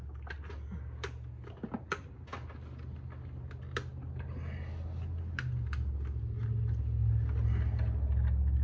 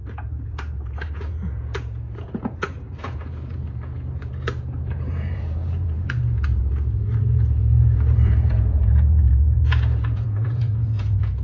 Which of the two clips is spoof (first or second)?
second